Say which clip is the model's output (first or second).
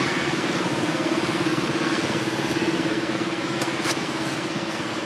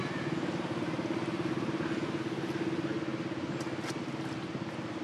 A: first